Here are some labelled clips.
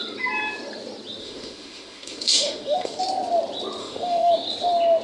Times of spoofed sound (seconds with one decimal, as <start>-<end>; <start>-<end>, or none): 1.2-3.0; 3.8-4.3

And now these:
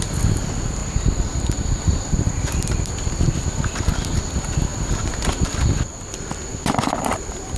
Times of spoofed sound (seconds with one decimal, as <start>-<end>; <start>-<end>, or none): none

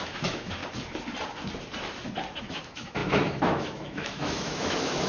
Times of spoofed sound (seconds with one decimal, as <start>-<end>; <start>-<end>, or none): 0.0-0.6; 2.4-5.1